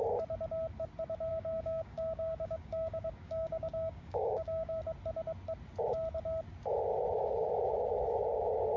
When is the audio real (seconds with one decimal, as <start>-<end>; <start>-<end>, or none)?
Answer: 0.0-1.3; 4.8-8.8